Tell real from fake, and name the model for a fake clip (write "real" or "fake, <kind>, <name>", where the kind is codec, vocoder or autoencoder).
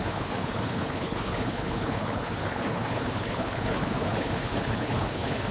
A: fake, codec, HILCodec